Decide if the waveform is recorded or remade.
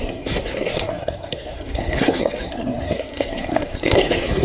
remade